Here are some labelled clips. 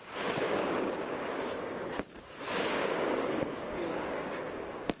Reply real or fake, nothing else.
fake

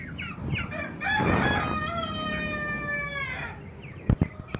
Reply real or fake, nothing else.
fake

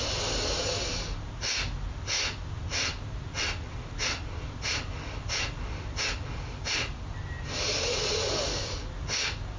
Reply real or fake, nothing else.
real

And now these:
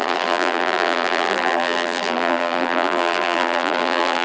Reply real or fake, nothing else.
fake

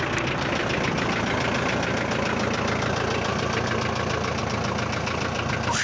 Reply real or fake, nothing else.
real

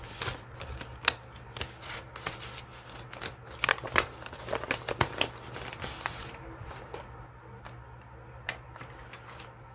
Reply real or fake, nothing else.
fake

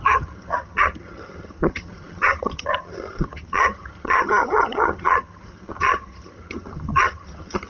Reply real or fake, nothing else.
fake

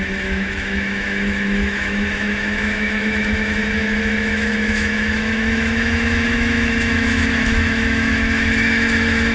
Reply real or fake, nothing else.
fake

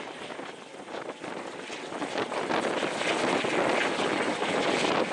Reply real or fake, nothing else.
real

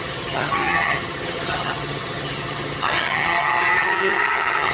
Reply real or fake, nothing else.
fake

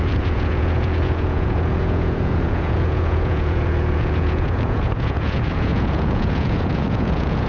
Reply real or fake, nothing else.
fake